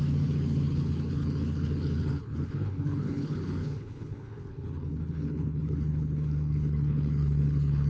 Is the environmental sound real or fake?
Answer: fake